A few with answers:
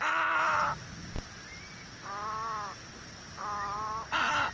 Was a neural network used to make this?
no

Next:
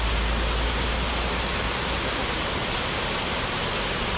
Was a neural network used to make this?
no